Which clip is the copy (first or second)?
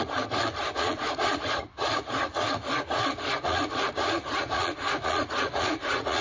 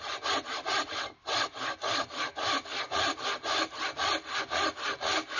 first